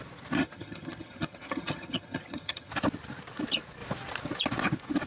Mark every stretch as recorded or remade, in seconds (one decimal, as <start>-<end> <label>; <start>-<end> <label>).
0.0-0.4 recorded; 0.4-2.7 remade; 2.7-5.1 recorded